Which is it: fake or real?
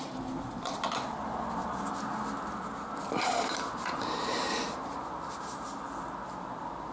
real